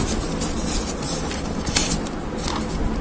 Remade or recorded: recorded